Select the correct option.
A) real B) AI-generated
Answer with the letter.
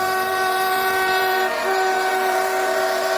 B